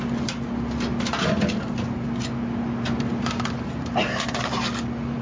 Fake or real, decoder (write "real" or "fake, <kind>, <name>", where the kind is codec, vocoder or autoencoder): real